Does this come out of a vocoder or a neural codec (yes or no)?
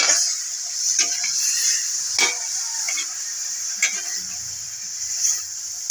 no